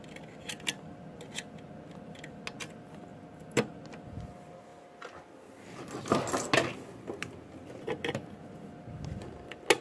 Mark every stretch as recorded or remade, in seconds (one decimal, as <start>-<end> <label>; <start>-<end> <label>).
0.0-9.8 recorded